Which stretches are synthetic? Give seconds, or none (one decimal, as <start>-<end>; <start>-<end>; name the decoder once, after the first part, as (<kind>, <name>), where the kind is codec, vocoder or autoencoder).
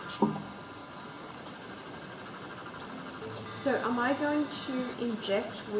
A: 0.8-1.3 (vocoder, BigVGAN v2)